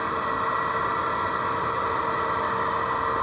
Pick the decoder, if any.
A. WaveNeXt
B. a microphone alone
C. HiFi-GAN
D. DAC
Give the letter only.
B